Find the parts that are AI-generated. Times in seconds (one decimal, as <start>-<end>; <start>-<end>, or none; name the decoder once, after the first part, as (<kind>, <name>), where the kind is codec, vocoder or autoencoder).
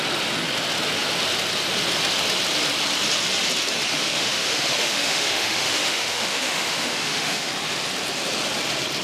3.9-7.5 (autoencoder, DAC-VAE)